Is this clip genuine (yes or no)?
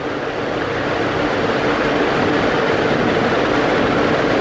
yes